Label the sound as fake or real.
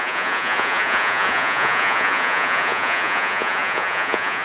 fake